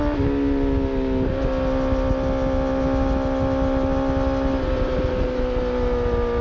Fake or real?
real